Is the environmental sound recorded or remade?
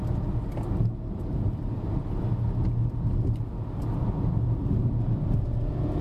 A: recorded